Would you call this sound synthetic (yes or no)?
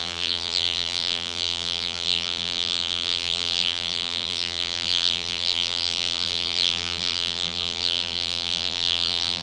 yes